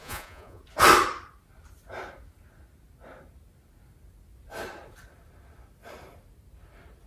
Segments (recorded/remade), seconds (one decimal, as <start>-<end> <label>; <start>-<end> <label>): 0.0-0.6 remade; 0.6-7.1 recorded